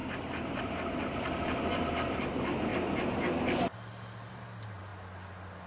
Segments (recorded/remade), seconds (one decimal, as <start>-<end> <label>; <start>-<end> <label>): 0.0-2.7 remade; 2.7-4.3 recorded; 4.3-4.9 remade; 4.9-5.7 recorded